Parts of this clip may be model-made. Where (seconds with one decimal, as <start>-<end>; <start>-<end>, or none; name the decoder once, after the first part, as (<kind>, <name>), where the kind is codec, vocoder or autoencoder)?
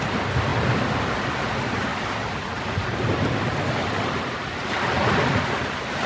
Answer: none